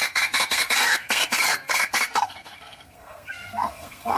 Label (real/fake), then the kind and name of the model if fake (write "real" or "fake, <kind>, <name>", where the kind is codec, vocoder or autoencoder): fake, codec, SNAC